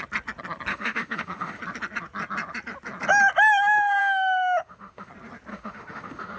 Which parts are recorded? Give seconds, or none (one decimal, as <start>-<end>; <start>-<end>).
0.0-0.7; 1.6-4.0; 5.1-5.5